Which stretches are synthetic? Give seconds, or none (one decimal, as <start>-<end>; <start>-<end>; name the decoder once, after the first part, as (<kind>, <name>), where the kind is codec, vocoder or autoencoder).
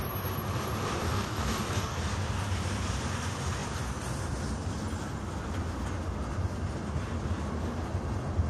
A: 1.0-2.0 (codec, DAC)